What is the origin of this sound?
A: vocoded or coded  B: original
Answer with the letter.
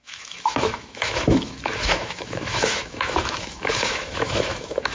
A